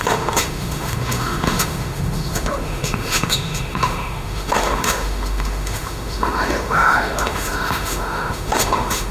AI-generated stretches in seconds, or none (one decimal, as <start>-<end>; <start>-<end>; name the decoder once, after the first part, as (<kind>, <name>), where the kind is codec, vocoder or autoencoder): 0.0-9.1 (autoencoder, DAC-VAE)

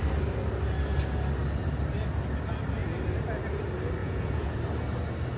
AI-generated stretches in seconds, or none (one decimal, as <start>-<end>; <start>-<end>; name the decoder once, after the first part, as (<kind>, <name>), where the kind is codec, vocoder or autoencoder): 4.0-4.6 (vocoder, Vocos)

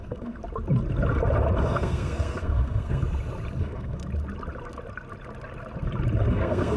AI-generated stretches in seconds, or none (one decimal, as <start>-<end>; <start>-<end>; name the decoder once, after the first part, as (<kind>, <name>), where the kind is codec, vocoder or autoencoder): 0.0-0.4 (codec, SNAC); 1.7-3.0; 3.6-4.0; 6.3-6.8

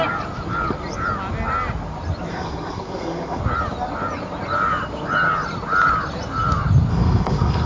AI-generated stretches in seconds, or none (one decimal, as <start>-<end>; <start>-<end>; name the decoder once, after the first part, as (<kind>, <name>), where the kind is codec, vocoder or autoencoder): 2.3-3.4 (codec, SNAC); 6.9-7.7

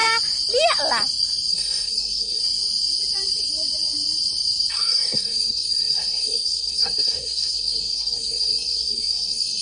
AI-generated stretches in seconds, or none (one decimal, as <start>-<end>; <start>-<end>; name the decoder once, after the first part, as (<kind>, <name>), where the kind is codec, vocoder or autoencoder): 1.5-2.4 (codec, SNAC); 4.7-9.6